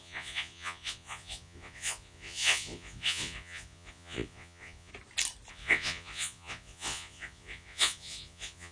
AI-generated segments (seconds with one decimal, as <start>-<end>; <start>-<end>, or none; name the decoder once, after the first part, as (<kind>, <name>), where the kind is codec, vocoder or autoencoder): 0.0-4.9 (vocoder, Vocos); 5.5-8.7